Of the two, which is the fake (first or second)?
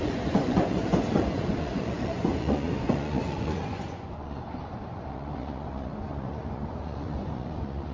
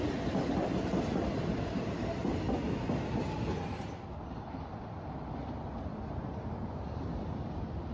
first